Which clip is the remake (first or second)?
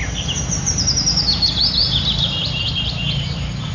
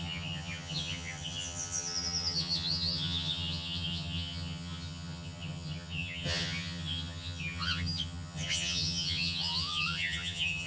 second